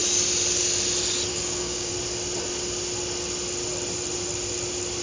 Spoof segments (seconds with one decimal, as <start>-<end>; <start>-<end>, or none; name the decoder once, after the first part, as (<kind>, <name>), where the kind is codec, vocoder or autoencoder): 1.3-1.9 (codec, DAC)